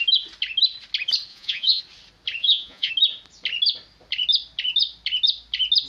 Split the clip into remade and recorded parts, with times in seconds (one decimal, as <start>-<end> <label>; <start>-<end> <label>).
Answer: 0.0-1.3 recorded; 1.3-1.8 remade; 1.8-2.4 recorded; 2.4-2.9 remade; 2.9-5.9 recorded